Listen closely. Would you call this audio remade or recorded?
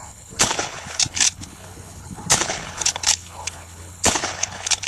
remade